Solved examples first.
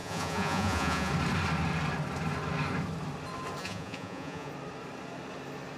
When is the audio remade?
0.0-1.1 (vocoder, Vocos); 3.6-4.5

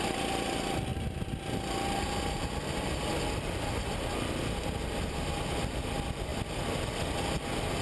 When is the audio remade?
none

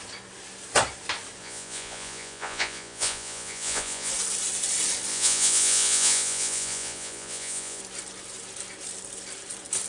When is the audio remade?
1.4-4.1 (vocoder, Vocos); 5.1-7.8

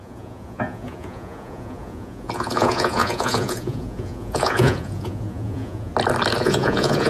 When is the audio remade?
0.0-5.9 (vocoder, Vocos); 6.4-7.1

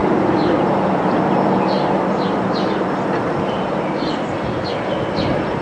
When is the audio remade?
none